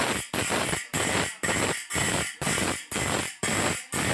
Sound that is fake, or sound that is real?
real